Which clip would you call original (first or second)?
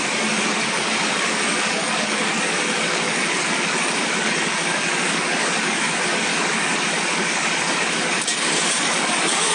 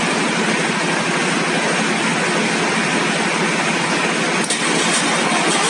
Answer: second